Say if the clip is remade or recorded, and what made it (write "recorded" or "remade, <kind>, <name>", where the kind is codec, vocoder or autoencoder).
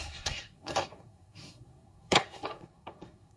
remade, codec, SNAC